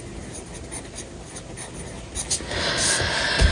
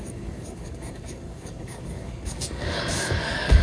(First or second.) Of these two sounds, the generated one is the second